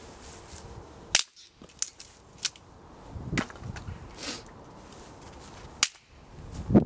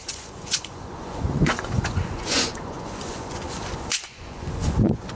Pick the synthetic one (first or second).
second